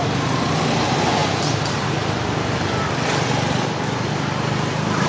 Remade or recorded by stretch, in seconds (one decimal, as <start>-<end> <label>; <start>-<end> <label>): 0.0-5.1 recorded